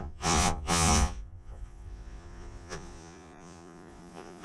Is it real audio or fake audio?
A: fake